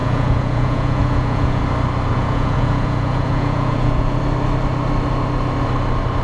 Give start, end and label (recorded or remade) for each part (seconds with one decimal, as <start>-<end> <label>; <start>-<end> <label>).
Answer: 0.0-1.6 remade; 1.6-2.1 recorded; 2.1-4.2 remade; 4.2-6.2 recorded